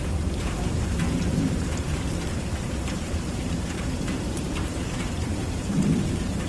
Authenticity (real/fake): fake